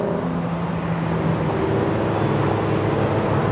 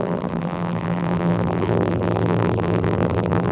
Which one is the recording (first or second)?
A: first